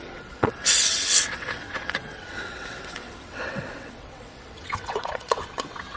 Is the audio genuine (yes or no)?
no